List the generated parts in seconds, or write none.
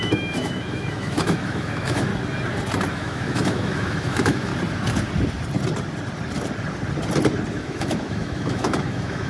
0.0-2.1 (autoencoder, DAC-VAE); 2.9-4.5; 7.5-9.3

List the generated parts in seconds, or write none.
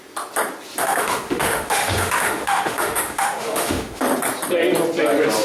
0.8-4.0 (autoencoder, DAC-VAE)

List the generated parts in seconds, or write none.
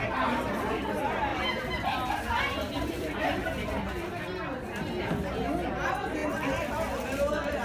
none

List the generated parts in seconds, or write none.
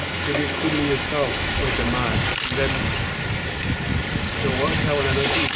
0.0-1.6 (autoencoder, DAC-VAE); 5.0-5.6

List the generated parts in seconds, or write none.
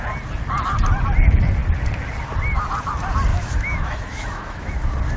3.3-4.7 (autoencoder, DAC-VAE)